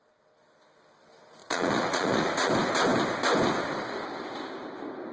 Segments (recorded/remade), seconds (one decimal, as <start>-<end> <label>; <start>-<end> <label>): 0.0-1.4 recorded; 1.4-2.5 remade; 2.5-5.1 recorded